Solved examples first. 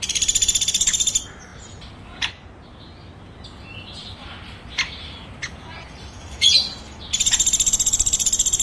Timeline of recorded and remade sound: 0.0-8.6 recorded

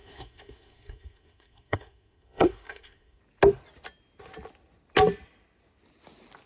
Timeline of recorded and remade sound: 0.0-3.2 remade; 3.2-6.5 recorded

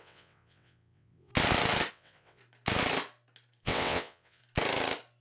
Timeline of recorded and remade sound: 0.0-1.3 remade; 1.3-1.9 recorded; 1.9-2.4 remade; 2.4-3.6 recorded; 3.6-4.4 remade; 4.4-5.2 recorded

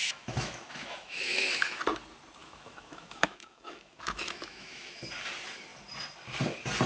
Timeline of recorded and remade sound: 0.0-1.8 remade; 1.8-2.4 recorded; 2.4-5.0 remade; 5.0-6.9 recorded

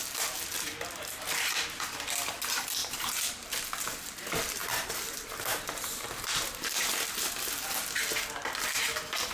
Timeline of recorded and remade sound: 0.0-2.8 recorded; 2.8-3.5 remade; 3.5-4.6 recorded; 4.6-6.7 remade; 6.7-9.3 recorded

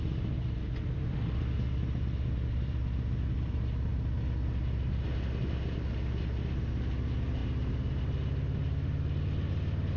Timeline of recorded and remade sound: 0.0-10.0 recorded